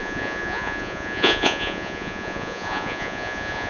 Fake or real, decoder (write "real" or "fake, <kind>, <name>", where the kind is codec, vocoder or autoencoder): fake, vocoder, Vocos